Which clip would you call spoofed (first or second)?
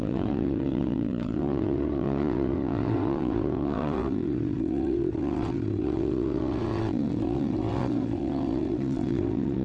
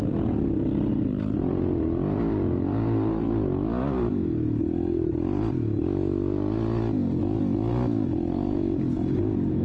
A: first